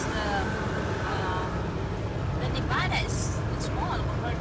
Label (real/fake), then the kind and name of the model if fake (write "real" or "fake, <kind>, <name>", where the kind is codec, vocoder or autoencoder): real